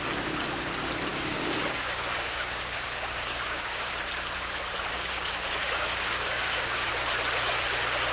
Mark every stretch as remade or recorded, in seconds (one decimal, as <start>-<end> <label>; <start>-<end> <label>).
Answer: 0.0-1.1 recorded; 1.1-3.9 remade; 3.9-4.9 recorded; 4.9-6.9 remade; 6.9-8.1 recorded

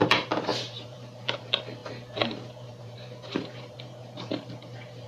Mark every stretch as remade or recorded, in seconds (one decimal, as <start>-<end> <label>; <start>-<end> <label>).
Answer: 0.0-5.1 remade

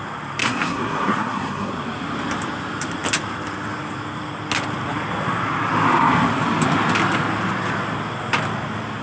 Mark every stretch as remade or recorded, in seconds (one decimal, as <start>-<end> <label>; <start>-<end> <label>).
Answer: 0.0-0.4 recorded; 0.4-1.7 remade; 1.7-9.0 recorded

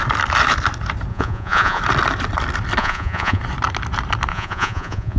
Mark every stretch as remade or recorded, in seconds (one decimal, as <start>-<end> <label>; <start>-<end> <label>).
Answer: 0.0-1.1 recorded; 1.1-1.8 remade; 1.8-2.8 recorded; 2.8-3.4 remade; 3.4-4.3 recorded; 4.3-5.2 remade

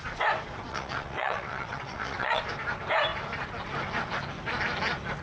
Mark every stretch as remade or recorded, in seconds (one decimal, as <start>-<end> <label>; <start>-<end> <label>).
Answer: 0.0-0.7 recorded; 0.7-2.4 remade; 2.4-5.2 recorded

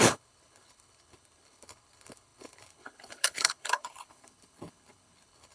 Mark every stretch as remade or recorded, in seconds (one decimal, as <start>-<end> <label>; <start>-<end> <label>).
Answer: 0.0-5.5 remade